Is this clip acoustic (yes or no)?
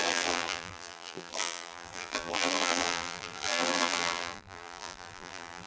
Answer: no